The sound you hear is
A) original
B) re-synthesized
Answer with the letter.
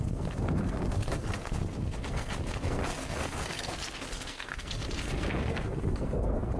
B